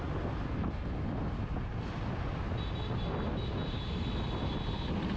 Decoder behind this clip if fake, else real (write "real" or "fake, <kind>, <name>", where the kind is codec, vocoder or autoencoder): real